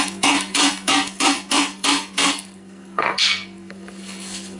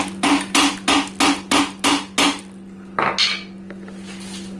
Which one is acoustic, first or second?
second